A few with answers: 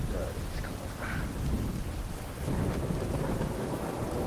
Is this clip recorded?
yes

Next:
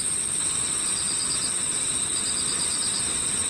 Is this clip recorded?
yes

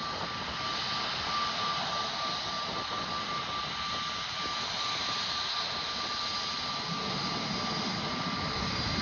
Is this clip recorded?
yes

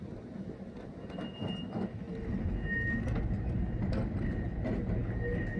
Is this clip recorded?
yes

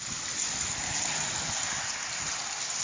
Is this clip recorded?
yes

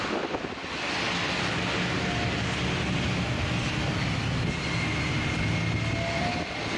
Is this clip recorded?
yes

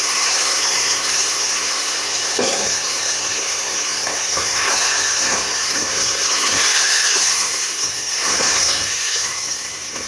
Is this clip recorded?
no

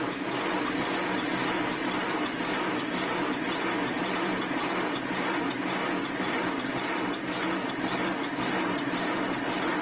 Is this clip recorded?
yes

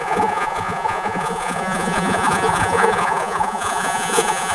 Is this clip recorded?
no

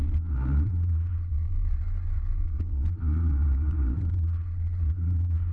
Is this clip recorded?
no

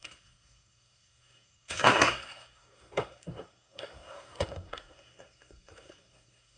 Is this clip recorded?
no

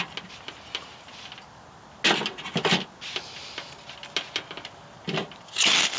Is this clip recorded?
yes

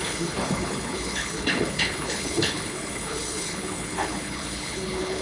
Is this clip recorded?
no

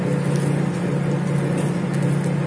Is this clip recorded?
yes